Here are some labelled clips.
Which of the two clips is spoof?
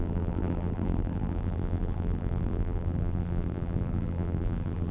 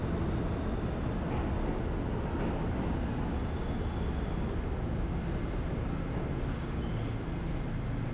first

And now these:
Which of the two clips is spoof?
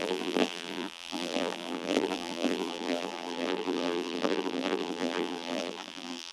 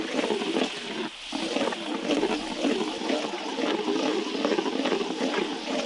first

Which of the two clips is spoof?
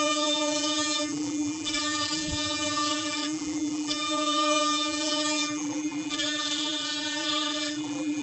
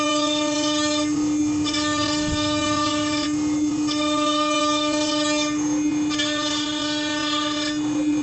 first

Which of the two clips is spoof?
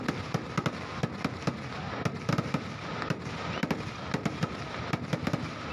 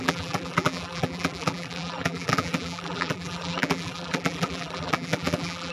second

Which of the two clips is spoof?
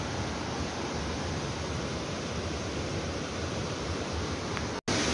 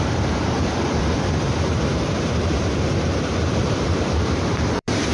second